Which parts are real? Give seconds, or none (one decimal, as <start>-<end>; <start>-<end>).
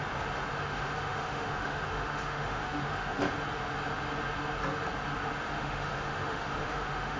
0.0-0.6; 3.2-5.4